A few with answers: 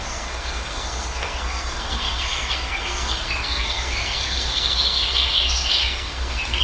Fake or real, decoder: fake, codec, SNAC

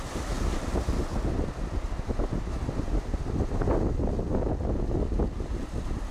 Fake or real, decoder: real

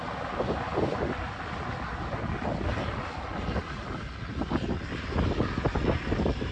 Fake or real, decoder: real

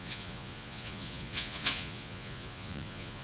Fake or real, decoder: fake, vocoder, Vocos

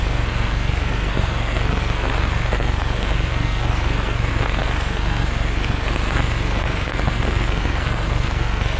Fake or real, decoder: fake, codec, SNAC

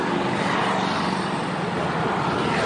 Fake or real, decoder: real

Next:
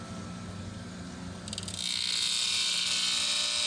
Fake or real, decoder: real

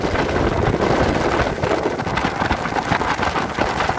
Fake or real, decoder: real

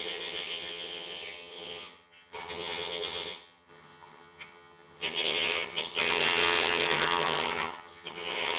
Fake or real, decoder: fake, vocoder, HiFi-GAN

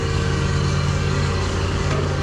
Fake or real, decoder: fake, codec, DAC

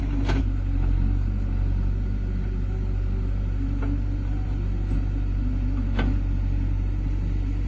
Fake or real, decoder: real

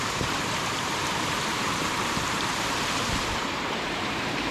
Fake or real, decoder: fake, vocoder, BigVGAN v2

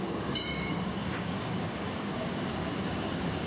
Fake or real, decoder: fake, codec, DAC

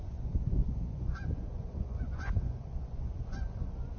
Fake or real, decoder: fake, vocoder, Vocos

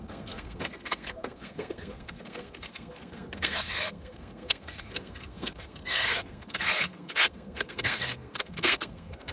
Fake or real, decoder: fake, codec, SNAC